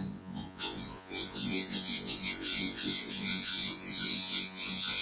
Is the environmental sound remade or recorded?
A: remade